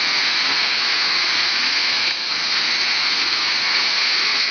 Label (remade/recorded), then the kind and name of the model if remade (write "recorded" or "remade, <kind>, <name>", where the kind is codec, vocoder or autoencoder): remade, codec, SNAC